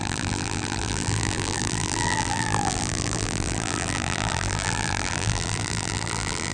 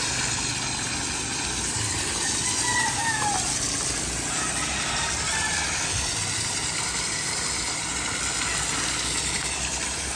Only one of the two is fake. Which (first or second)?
first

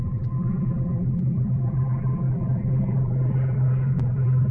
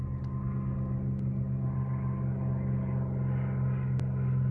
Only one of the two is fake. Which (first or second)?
first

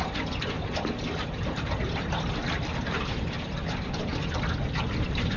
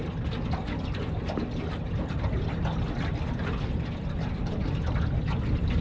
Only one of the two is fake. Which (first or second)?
first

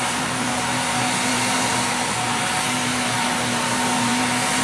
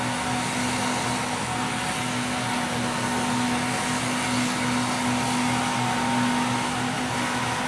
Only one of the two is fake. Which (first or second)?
first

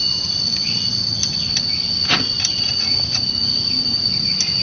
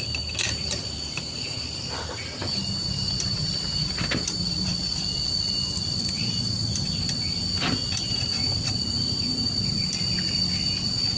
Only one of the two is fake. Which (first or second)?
second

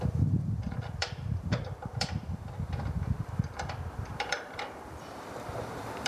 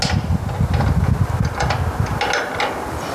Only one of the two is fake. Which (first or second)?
first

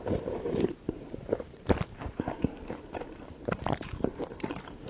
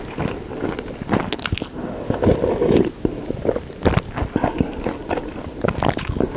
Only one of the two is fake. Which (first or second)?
first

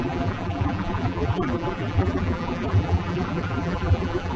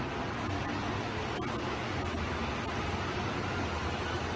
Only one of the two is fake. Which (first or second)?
first